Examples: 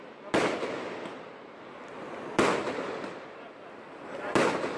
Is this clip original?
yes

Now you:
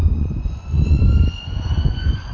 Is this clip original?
no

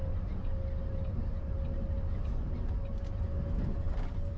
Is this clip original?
yes